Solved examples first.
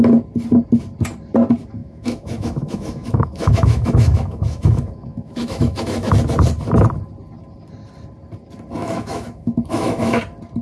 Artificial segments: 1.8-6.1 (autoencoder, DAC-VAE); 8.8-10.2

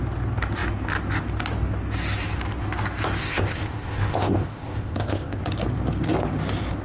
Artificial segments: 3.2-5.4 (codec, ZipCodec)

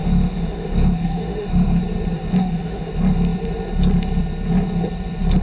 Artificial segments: 0.0-1.8 (autoencoder, DAC-VAE); 2.4-2.9

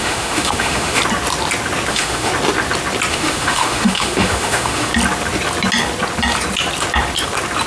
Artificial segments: 0.0-1.0 (autoencoder, DAC-VAE); 1.9-2.3; 3.1-4.9

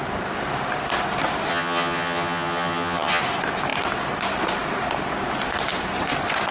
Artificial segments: 1.5-3.2 (vocoder, HiFi-GAN)